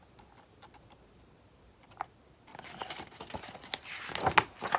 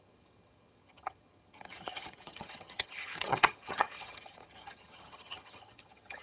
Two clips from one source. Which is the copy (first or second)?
second